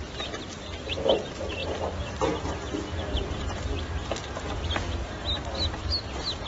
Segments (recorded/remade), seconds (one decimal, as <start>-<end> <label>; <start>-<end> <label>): 0.0-6.5 recorded